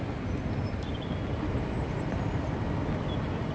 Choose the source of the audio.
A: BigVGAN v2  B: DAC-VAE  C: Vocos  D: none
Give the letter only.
D